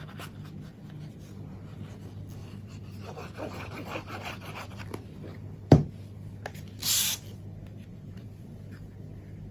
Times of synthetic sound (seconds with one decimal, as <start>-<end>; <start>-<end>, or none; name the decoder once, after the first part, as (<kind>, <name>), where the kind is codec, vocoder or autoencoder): 2.4-4.8 (vocoder, BigVGAN v2); 5.3-5.9; 7.9-8.5